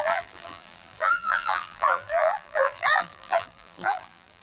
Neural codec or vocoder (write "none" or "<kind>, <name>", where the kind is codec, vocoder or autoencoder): vocoder, BigVGAN v2